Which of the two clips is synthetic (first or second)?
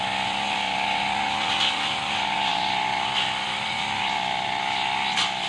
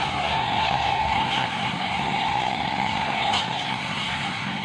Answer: second